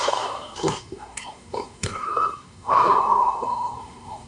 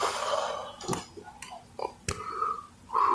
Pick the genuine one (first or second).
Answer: second